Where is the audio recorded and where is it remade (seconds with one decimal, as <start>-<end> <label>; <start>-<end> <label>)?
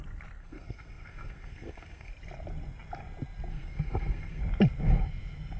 0.0-0.4 recorded; 0.4-2.1 remade; 2.1-3.5 recorded; 3.5-4.4 remade; 4.4-5.6 recorded